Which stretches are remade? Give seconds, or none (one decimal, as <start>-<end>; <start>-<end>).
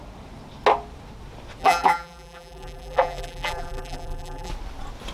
1.6-4.5